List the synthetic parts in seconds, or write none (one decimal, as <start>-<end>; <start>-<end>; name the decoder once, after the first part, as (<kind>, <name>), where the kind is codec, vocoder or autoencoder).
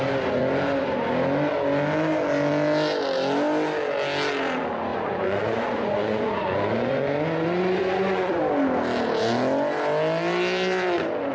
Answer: 4.9-8.4 (vocoder, Vocos)